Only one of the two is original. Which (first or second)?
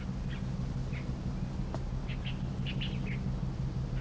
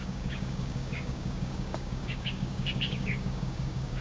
first